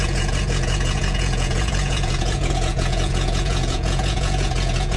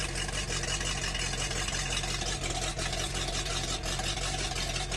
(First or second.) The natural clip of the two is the second